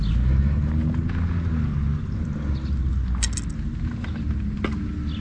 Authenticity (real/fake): real